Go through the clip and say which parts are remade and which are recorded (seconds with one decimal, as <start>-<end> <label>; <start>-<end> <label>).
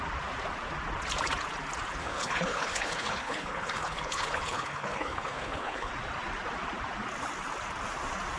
0.0-2.0 recorded; 2.0-5.9 remade; 5.9-8.4 recorded